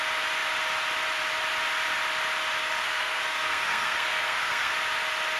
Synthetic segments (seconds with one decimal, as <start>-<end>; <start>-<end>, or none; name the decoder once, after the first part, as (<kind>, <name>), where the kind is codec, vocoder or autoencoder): 2.6-4.7 (codec, SNAC)